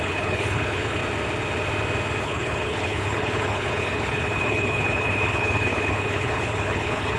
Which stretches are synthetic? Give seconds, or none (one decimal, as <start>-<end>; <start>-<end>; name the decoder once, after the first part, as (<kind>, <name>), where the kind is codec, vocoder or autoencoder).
0.0-1.0 (codec, HILCodec); 2.2-7.2

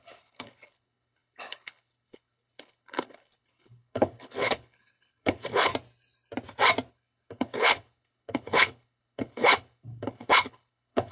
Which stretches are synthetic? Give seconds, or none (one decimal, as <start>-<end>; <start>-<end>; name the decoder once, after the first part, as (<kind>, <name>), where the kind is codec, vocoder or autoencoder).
0.0-5.7 (codec, HILCodec); 6.9-11.1